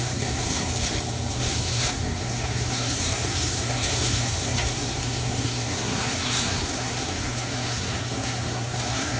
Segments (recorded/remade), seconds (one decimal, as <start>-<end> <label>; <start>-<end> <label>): 0.0-0.7 remade; 0.7-1.3 recorded; 1.3-9.2 remade